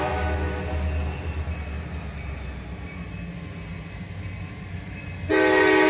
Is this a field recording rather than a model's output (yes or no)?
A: yes